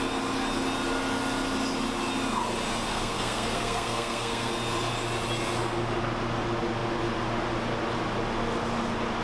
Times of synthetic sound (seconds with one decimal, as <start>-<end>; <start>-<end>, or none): 2.9-4.5